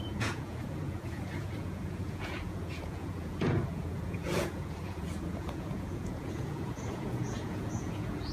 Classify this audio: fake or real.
fake